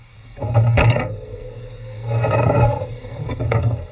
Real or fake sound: fake